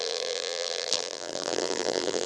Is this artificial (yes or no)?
yes